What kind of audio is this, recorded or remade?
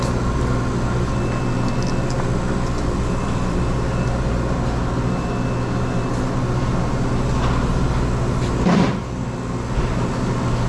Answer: recorded